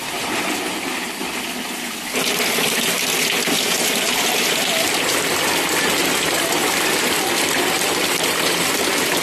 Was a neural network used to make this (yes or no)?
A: no